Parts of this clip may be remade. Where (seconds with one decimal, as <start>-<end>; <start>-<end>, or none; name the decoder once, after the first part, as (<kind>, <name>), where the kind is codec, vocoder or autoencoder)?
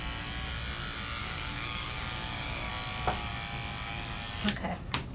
1.2-2.7 (codec, DAC)